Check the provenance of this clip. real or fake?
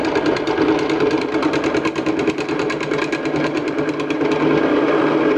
real